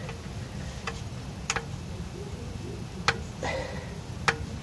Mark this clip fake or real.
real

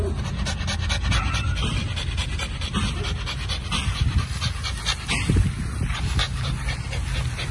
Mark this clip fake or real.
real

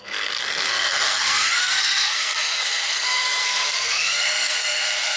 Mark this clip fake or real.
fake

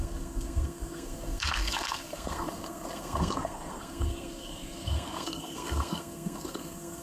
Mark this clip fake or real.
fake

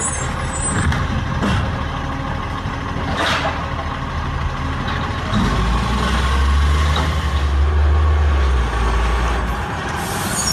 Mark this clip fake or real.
real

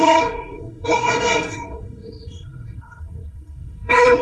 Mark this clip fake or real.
fake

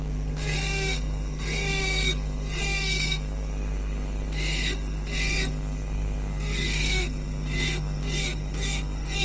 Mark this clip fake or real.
fake